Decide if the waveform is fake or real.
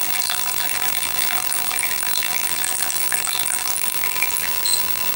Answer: fake